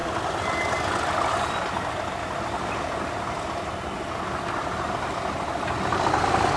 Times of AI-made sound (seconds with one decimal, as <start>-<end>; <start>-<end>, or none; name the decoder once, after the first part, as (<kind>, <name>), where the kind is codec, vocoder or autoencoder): none

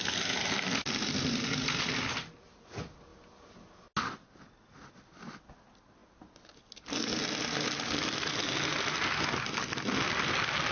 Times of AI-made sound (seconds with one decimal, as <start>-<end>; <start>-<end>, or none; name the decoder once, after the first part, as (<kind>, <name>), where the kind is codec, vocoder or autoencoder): none

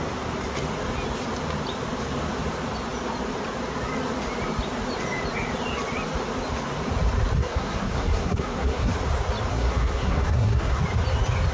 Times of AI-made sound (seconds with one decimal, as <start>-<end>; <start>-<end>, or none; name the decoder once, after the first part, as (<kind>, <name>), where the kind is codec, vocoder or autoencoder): 7.4-8.9 (codec, SNAC); 9.5-10.8

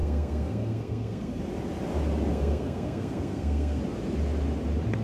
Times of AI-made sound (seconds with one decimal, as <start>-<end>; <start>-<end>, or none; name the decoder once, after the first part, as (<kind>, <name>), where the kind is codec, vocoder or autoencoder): 0.0-1.4 (codec, SNAC); 2.3-3.8